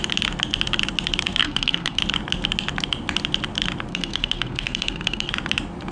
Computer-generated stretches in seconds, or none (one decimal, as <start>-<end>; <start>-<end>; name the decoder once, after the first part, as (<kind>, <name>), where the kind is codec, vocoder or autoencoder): 1.4-2.0 (codec, SNAC); 3.9-5.3